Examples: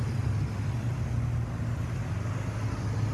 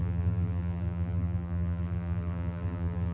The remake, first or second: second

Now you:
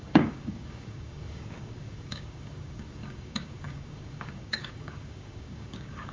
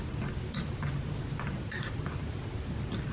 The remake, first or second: first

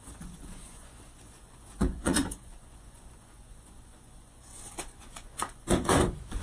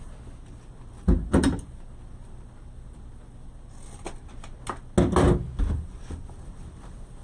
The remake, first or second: first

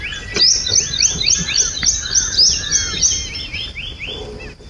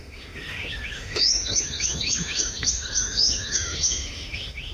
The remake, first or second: second